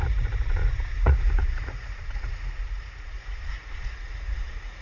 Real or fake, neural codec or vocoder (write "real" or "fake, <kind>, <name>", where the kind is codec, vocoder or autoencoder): fake, vocoder, Vocos